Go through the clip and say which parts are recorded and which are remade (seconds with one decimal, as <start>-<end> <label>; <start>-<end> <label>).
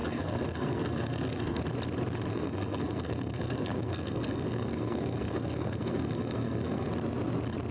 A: 0.0-1.6 remade; 1.6-2.3 recorded; 2.3-6.9 remade; 6.9-7.7 recorded